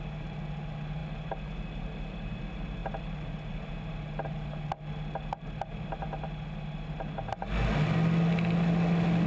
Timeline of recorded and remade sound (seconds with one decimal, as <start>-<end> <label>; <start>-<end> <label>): 0.0-9.3 recorded